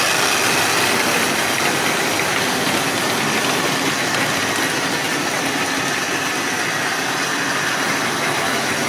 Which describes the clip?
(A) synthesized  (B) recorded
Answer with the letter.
B